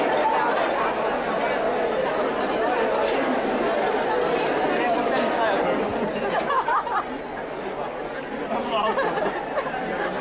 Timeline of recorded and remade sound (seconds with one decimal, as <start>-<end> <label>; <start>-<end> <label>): 0.0-10.2 recorded